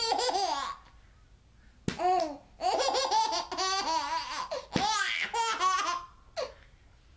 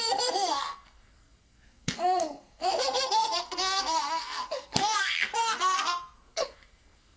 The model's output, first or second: second